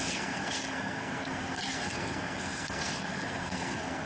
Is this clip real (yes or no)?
no